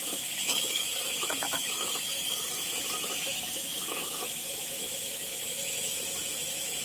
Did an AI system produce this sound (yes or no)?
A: yes